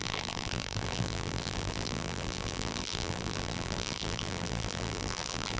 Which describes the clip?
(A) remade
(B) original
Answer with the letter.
A